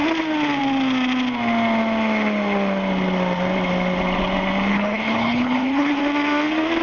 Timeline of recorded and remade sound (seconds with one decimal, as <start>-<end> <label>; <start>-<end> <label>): 0.0-4.7 recorded; 4.7-6.0 remade; 6.0-6.8 recorded